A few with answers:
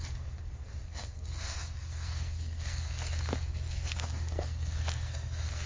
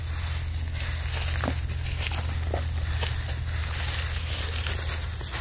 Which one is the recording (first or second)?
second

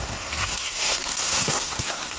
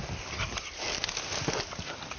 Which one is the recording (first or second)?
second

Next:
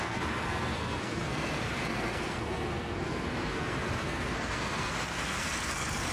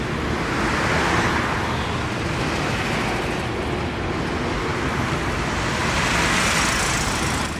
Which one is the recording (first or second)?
second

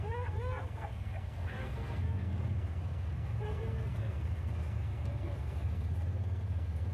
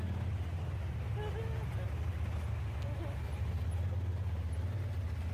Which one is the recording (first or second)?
second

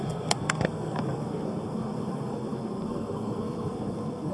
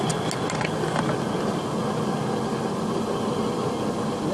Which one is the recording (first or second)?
second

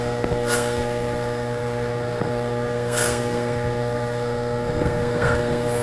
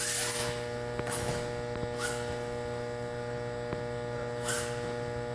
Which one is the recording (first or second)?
second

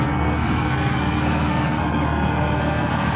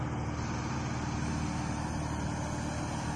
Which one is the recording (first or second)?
second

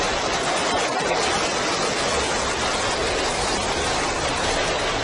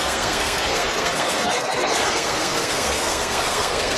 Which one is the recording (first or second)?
first